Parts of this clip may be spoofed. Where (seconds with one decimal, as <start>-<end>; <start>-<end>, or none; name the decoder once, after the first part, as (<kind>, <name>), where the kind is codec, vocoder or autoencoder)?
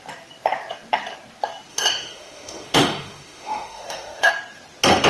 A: 1.7-4.3 (autoencoder, DAC-VAE)